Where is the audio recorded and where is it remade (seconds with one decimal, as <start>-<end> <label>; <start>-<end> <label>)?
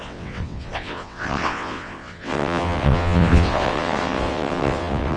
0.0-5.2 remade